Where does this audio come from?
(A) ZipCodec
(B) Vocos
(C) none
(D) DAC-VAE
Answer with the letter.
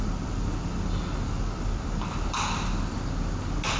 C